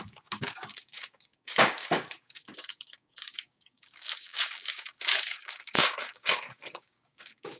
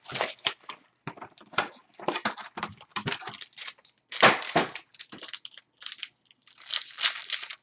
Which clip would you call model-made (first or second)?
first